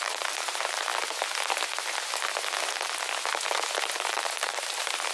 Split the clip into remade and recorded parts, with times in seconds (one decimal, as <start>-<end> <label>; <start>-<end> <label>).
0.0-0.9 remade; 0.9-3.9 recorded; 3.9-5.1 remade